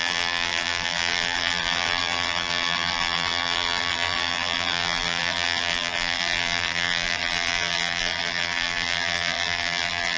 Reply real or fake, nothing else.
fake